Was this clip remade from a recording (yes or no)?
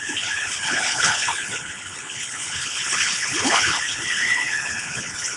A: yes